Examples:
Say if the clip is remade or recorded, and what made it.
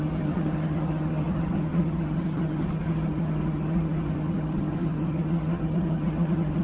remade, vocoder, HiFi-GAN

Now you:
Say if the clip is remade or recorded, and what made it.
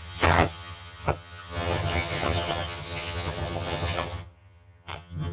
remade, vocoder, HiFi-GAN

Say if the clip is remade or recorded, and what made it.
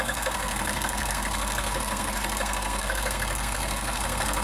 remade, codec, SNAC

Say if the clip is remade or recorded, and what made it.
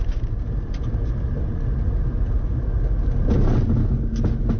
recorded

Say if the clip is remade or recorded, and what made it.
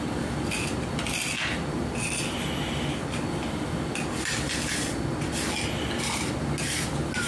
recorded